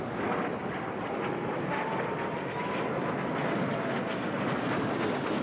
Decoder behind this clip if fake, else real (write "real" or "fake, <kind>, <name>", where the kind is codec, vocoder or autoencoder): real